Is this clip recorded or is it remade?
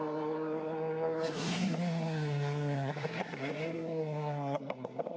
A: remade